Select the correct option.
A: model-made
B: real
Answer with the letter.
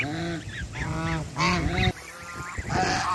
B